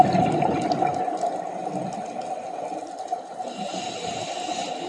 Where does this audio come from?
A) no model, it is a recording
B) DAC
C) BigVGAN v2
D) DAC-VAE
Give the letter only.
A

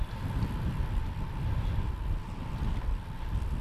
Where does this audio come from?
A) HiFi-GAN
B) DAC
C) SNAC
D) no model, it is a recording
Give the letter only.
D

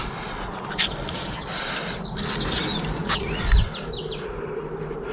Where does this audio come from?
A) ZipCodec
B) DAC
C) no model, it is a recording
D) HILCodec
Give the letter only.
C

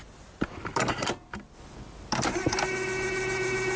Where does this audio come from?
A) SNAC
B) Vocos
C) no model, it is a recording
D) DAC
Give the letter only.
C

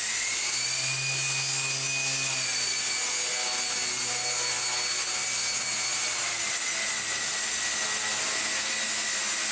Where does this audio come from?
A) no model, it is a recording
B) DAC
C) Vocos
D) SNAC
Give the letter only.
A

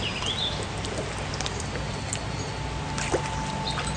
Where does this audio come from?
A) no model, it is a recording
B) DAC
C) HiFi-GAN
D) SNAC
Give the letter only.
A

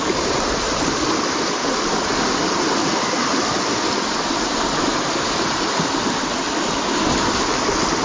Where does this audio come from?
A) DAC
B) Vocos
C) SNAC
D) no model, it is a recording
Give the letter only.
D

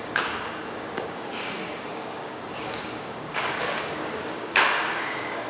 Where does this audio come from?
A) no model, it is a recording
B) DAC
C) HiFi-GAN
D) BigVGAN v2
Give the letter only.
B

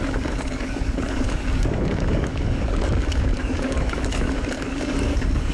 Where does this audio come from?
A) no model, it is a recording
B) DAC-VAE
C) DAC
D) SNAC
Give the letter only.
C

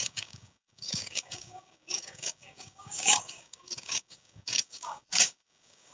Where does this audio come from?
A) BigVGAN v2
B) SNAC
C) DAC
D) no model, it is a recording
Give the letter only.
C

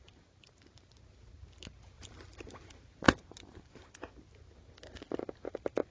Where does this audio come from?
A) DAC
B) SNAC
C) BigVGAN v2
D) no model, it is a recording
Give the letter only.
D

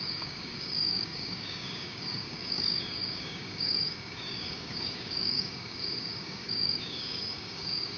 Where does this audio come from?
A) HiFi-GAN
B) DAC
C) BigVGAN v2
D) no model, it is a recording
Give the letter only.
B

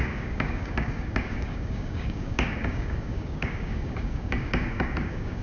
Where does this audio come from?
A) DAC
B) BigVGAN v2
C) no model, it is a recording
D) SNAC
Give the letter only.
A